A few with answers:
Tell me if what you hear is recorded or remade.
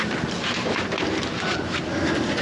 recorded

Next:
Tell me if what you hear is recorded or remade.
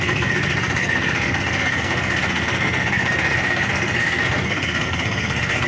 remade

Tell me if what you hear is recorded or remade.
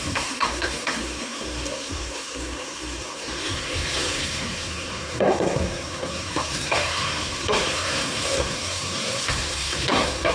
remade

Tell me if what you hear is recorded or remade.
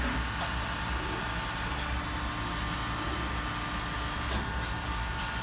recorded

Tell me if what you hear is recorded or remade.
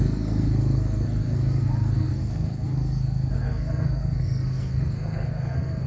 remade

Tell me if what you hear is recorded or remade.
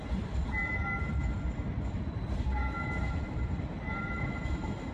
recorded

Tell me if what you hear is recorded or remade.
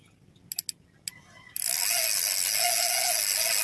recorded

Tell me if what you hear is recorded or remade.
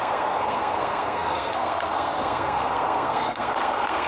remade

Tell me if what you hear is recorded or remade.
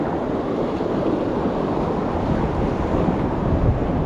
recorded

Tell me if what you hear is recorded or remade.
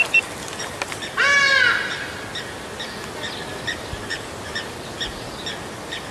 recorded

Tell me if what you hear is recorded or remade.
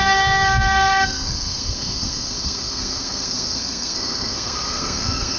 remade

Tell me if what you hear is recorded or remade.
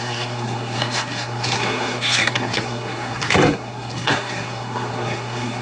remade